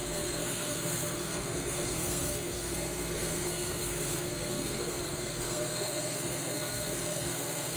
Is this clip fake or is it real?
fake